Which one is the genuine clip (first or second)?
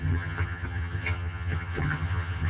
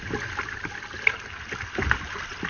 second